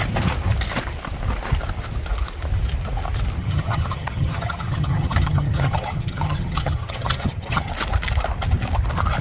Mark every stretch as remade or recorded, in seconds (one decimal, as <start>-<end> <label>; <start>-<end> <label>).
0.0-3.4 recorded; 3.4-7.7 remade; 7.7-9.2 recorded